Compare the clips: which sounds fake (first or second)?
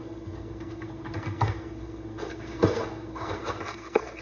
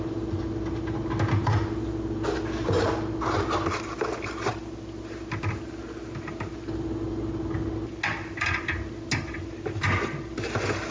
first